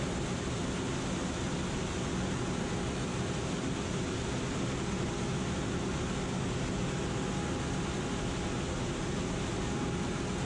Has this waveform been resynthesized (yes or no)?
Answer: no